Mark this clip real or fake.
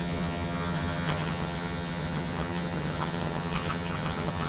fake